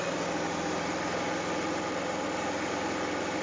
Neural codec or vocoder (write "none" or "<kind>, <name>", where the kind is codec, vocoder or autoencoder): none